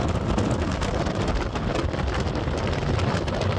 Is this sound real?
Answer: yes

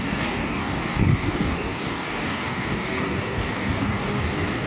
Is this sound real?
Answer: no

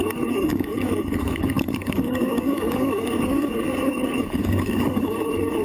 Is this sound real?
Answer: no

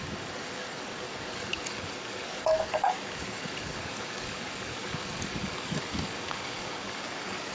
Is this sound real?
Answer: no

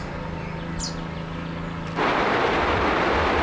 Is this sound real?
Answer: yes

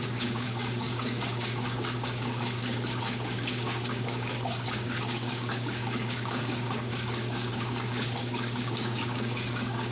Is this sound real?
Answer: no